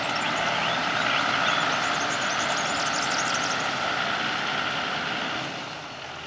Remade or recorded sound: recorded